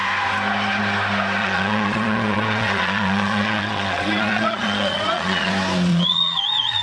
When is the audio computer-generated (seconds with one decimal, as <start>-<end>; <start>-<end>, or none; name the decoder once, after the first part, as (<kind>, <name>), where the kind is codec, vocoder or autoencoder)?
1.4-5.5 (vocoder, Vocos); 5.9-6.8